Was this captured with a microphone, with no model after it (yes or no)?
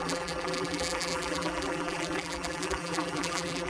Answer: no